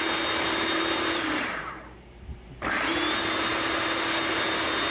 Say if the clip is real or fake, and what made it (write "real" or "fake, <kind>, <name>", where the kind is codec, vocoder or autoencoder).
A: real